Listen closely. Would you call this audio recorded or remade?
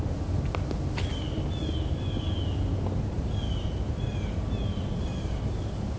recorded